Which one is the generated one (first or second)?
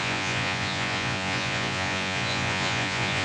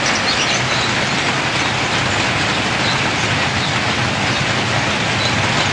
first